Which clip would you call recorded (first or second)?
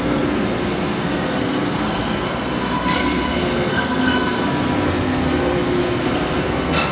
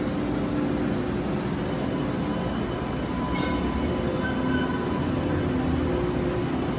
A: second